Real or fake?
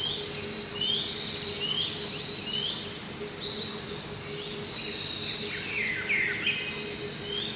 real